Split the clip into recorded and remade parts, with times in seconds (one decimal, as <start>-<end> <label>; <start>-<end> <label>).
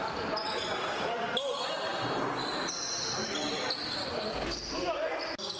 0.0-5.6 recorded